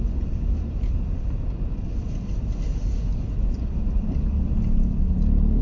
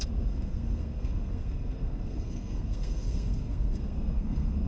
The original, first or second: first